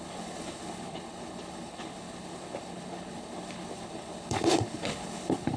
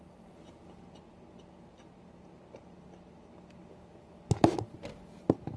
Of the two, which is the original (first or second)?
second